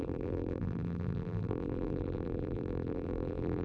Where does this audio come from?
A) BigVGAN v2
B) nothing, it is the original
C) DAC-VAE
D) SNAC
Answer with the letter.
A